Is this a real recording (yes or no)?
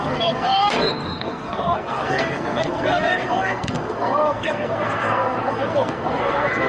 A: no